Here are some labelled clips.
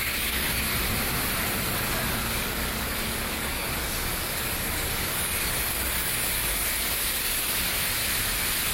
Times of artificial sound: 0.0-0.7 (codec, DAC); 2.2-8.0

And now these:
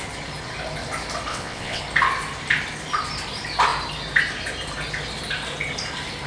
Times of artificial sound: 1.3-1.8 (vocoder, WaveNeXt)

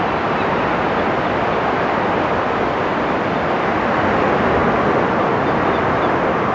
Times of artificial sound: none

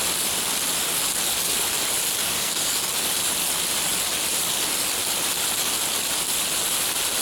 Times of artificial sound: 2.2-2.8 (codec, SNAC)

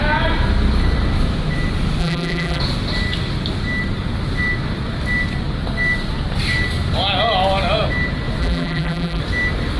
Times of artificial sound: 2.0-2.6 (vocoder, BigVGAN v2); 8.4-9.2

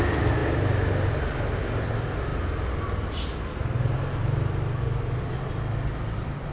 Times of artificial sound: none